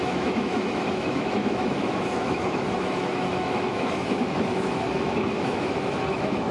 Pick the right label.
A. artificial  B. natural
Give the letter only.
A